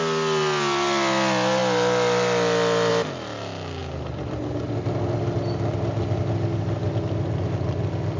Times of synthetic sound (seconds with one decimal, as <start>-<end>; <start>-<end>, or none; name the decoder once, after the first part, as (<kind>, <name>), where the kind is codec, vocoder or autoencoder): none